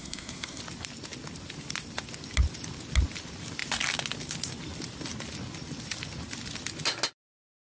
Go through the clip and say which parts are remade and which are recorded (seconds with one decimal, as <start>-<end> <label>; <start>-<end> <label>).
0.0-0.6 remade; 0.6-7.7 recorded